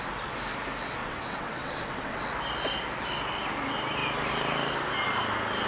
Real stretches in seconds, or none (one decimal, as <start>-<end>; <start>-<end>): 0.0-1.0; 2.2-5.7